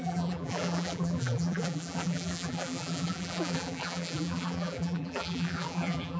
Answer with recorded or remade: remade